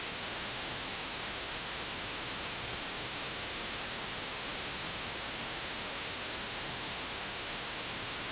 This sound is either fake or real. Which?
fake